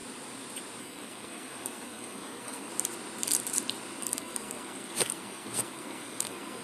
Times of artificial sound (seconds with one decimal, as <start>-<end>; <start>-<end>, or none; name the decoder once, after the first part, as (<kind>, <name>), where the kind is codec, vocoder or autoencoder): 0.8-2.7 (codec, SNAC); 4.0-6.6